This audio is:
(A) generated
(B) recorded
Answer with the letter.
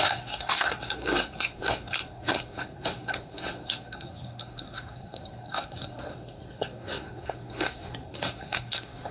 A